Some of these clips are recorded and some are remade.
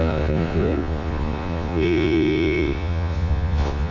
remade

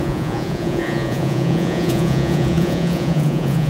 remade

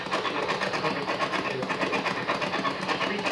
recorded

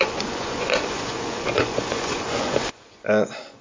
remade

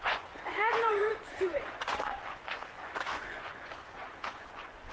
remade